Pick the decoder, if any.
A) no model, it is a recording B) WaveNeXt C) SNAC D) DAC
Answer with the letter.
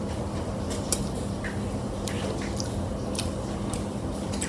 A